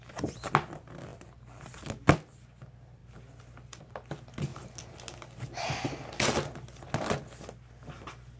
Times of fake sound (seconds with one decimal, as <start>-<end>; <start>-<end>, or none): 1.1-1.7; 3.0-3.8